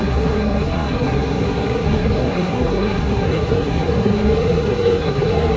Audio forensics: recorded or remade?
remade